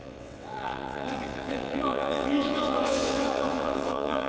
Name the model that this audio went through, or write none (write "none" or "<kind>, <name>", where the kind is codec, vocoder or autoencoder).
vocoder, WaveNeXt